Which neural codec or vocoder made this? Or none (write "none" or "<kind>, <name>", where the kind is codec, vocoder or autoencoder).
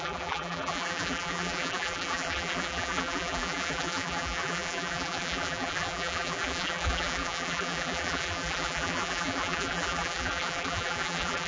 vocoder, BigVGAN v2